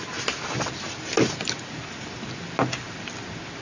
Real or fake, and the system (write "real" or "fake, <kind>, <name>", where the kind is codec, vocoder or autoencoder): real